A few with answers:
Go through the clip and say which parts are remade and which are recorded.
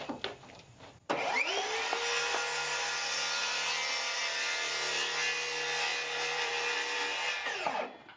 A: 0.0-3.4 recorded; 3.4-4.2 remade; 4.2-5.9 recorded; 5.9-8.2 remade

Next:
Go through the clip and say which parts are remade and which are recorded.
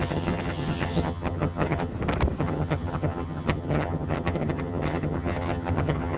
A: 0.0-1.9 remade; 1.9-2.4 recorded; 2.4-6.2 remade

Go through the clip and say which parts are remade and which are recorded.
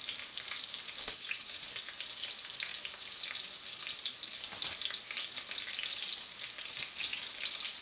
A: 0.0-1.1 recorded; 1.1-1.6 remade; 1.6-7.8 recorded